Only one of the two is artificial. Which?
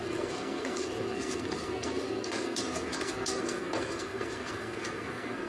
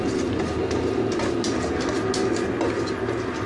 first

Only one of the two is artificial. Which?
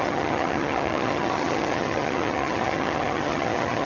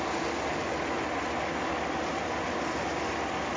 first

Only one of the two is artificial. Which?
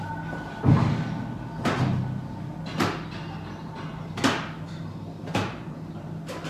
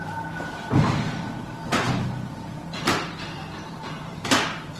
second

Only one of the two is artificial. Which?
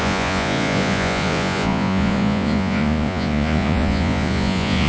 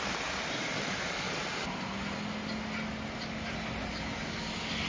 first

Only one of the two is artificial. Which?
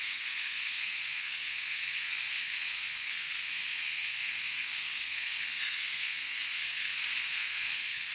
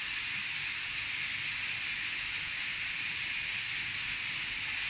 first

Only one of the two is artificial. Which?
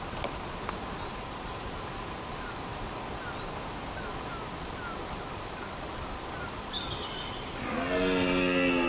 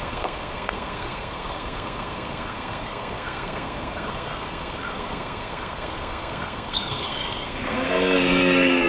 second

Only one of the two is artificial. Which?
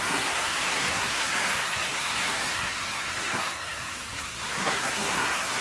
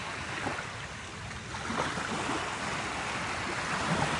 first